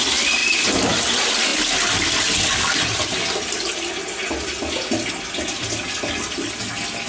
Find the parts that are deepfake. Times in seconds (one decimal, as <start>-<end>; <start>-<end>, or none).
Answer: none